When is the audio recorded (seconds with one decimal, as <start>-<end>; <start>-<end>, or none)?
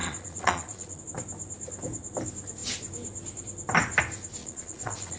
1.0-4.4